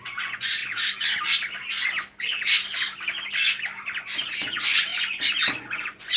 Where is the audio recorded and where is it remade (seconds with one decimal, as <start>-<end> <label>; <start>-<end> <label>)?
0.0-0.6 remade; 0.6-4.0 recorded; 4.0-4.9 remade; 4.9-5.6 recorded; 5.6-6.2 remade